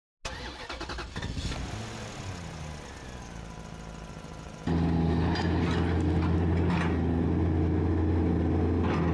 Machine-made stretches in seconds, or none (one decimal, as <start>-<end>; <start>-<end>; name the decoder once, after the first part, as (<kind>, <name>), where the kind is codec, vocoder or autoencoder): none